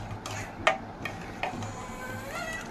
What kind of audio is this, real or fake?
real